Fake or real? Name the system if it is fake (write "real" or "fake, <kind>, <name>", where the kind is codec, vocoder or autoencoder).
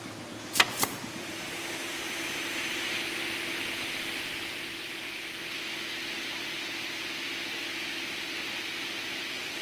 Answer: real